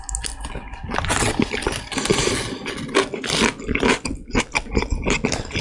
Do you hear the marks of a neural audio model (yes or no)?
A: no